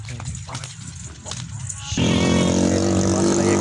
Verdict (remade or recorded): recorded